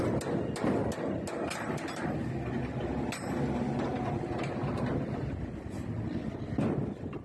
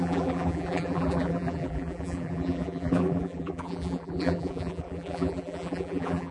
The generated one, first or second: second